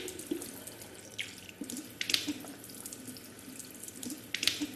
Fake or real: real